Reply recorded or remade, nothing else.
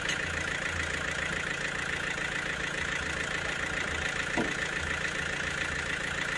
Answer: recorded